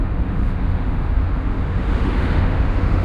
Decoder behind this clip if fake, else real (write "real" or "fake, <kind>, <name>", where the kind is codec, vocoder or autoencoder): fake, autoencoder, DAC-VAE